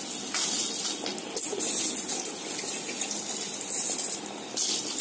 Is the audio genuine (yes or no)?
yes